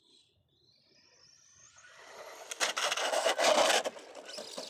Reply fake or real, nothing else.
real